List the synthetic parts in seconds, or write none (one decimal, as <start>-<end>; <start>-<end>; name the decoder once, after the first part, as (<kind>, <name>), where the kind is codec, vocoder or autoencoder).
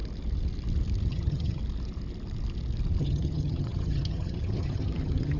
1.1-1.6 (vocoder, HiFi-GAN); 3.0-5.4